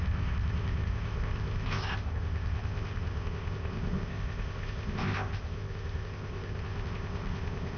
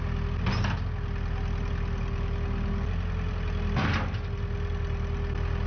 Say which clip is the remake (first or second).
first